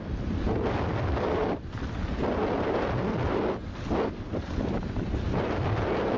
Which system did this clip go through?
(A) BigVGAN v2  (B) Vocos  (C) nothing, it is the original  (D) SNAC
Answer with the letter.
C